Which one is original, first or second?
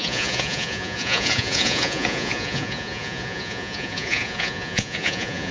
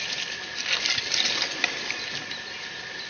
second